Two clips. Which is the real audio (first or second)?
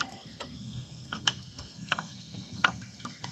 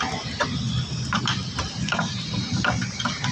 second